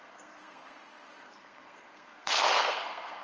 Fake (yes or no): yes